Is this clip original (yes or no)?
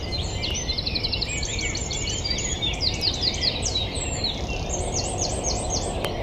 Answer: no